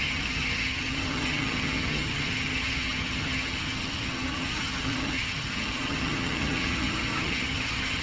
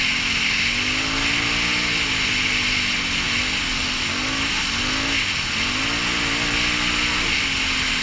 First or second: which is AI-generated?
first